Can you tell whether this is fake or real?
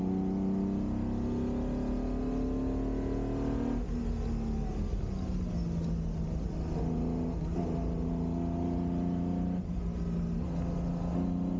real